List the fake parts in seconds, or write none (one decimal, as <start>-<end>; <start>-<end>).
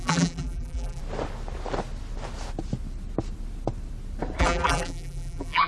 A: 0.0-1.0; 4.4-5.7